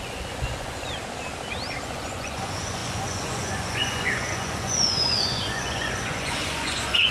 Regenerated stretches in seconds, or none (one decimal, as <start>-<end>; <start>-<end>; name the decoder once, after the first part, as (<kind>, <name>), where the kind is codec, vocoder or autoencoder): 0.0-0.9 (vocoder, Vocos); 1.8-7.1

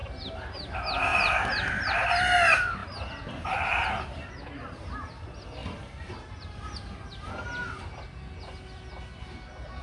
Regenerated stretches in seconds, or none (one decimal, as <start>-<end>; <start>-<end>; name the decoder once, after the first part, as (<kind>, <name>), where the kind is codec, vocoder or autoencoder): 0.0-0.7 (vocoder, BigVGAN v2)

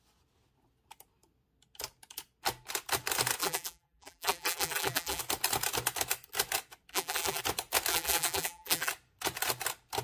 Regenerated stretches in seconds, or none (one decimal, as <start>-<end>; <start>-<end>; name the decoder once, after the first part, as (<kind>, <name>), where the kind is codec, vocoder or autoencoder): 3.4-5.2 (vocoder, BigVGAN v2); 6.9-7.4; 7.9-8.9

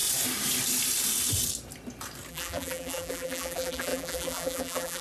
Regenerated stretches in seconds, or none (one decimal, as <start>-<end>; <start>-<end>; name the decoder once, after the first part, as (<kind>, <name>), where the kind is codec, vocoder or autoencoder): 2.3-5.0 (vocoder, BigVGAN v2)

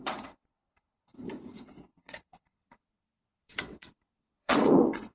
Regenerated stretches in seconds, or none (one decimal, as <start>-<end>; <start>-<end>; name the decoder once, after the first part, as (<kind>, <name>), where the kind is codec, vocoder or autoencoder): 0.0-1.0 (vocoder, WaveNeXt); 1.6-5.1

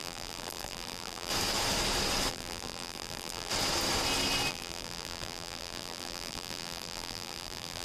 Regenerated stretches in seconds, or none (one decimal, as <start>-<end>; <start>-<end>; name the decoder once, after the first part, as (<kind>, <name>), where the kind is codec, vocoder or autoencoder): 0.0-1.3 (vocoder, BigVGAN v2); 2.3-3.5; 4.5-7.8